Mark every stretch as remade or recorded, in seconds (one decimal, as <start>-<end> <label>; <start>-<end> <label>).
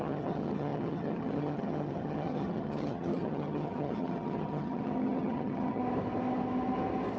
0.0-5.8 remade; 5.8-7.2 recorded